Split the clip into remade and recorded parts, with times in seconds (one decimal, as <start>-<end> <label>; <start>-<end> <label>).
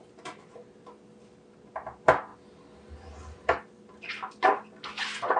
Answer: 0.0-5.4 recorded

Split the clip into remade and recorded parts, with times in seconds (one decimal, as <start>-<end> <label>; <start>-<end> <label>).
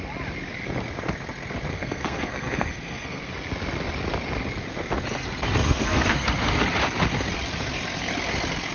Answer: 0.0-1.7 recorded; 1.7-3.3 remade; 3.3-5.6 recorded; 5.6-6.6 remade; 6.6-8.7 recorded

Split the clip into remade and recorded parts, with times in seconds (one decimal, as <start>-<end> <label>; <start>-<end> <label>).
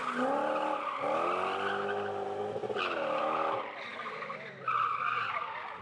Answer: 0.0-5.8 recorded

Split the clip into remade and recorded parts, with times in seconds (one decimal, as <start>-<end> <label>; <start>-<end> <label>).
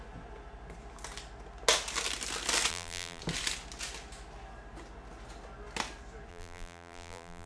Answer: 0.0-2.7 recorded; 2.7-3.2 remade; 3.2-6.3 recorded; 6.3-7.5 remade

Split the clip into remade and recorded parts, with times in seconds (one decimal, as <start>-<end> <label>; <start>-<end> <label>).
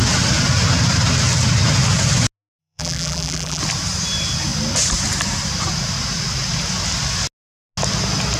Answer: 0.0-2.6 recorded; 2.6-3.6 remade; 3.6-8.4 recorded